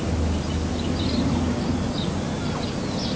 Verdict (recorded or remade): recorded